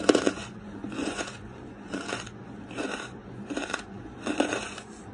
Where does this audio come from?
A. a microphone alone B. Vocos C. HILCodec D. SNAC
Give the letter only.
B